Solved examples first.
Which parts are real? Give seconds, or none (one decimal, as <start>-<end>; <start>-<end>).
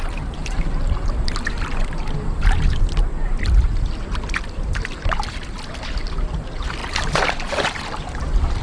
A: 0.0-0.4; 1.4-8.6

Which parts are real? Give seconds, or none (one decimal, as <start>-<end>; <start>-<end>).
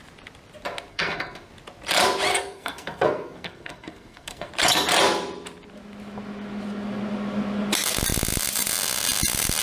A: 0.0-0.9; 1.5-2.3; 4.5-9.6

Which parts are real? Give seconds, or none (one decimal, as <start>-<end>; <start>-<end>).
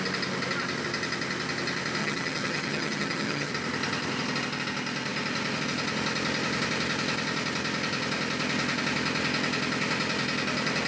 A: 0.0-2.0; 3.5-10.9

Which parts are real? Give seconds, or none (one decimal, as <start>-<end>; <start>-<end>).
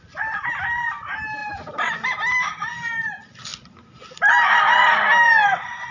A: 0.0-5.9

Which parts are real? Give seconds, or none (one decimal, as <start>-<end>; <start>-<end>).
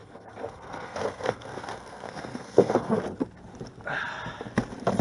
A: 3.0-5.0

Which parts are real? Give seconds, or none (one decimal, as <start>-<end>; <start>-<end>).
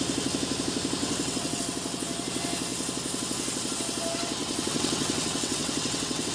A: 0.0-1.0; 1.6-4.4